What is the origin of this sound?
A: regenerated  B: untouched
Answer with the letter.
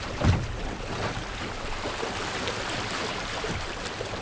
B